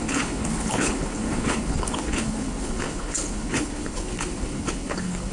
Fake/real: fake